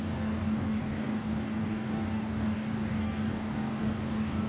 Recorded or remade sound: remade